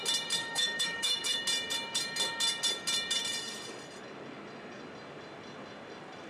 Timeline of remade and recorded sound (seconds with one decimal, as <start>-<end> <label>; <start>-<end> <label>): 0.0-0.4 recorded; 0.4-1.4 remade; 1.4-6.3 recorded